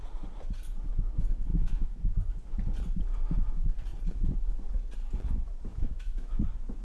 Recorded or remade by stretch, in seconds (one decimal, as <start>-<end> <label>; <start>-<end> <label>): 0.0-1.5 recorded; 1.5-2.0 remade; 2.0-5.7 recorded; 5.7-6.3 remade; 6.3-6.8 recorded